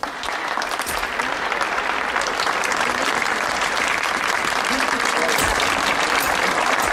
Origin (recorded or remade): recorded